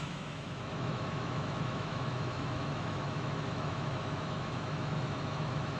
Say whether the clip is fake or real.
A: fake